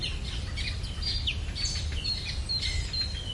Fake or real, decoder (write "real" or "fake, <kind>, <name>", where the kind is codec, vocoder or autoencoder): real